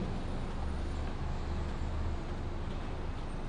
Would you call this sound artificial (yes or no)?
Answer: no